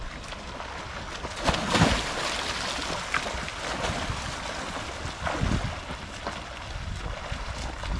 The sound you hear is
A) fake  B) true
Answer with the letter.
B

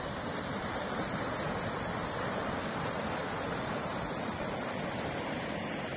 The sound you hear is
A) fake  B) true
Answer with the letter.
B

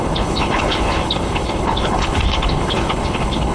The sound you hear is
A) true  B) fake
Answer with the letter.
B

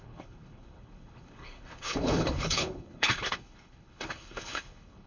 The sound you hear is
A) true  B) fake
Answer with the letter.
B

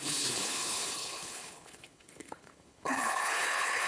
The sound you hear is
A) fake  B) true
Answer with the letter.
A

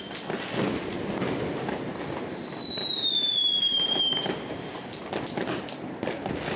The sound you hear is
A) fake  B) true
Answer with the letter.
B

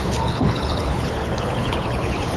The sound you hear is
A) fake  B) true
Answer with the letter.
A